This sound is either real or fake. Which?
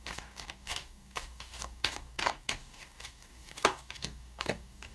fake